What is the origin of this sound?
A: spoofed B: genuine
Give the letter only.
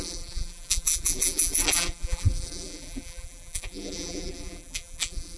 A